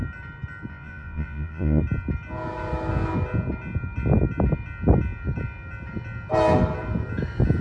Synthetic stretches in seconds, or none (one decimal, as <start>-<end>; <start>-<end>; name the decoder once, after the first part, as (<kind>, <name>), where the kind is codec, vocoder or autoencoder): 0.7-1.8 (vocoder, Vocos)